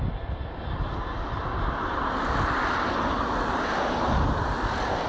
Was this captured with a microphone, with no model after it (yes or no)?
yes